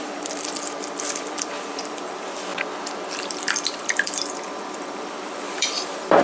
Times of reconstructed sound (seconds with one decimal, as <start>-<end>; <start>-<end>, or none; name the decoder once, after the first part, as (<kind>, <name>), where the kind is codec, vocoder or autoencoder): 0.0-2.5 (vocoder, BigVGAN v2); 3.3-6.2